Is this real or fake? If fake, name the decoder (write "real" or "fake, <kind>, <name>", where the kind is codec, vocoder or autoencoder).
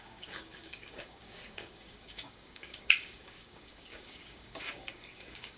fake, codec, DAC